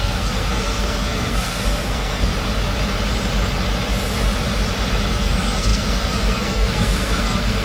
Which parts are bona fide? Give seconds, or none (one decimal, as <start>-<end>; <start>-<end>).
2.3-5.1